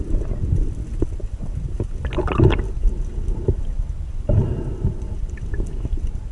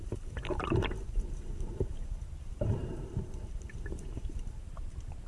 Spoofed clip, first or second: second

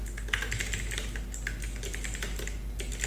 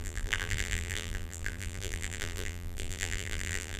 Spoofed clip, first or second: second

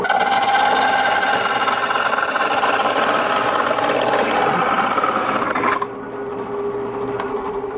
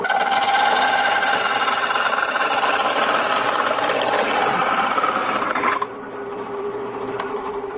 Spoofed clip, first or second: second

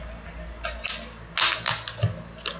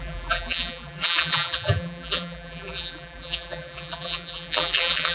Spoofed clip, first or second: second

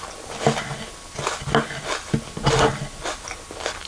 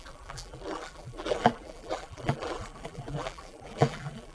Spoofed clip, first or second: second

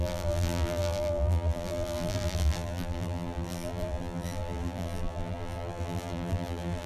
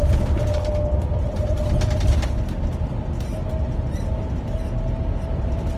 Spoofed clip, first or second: first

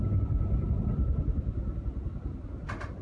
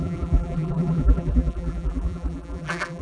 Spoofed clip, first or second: second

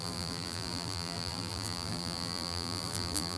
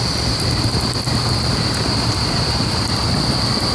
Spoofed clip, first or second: first